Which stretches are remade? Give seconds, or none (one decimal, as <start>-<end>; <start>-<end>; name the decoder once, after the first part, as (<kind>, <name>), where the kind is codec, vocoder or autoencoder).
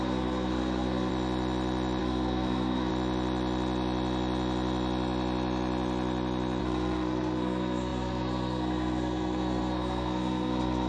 0.0-1.1 (codec, SNAC); 2.0-2.9; 6.6-10.9